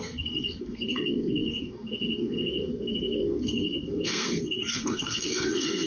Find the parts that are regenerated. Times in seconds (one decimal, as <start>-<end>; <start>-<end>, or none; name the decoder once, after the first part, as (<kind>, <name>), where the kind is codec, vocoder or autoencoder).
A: 0.0-5.9 (codec, SNAC)